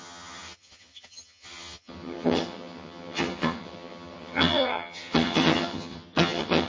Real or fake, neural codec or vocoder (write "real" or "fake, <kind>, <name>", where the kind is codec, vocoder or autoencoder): fake, vocoder, HiFi-GAN